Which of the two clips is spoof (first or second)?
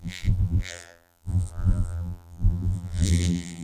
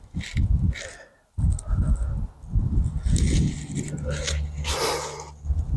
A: first